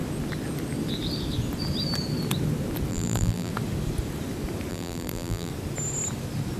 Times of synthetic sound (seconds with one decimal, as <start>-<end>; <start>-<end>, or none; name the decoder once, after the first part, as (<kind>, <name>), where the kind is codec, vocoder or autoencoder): 2.9-3.5 (vocoder, BigVGAN v2); 4.7-5.5